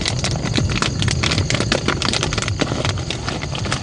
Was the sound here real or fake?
real